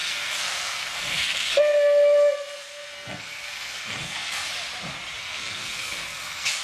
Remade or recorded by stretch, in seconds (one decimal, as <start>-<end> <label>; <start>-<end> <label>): 0.0-4.4 remade; 4.4-5.2 recorded; 5.2-6.6 remade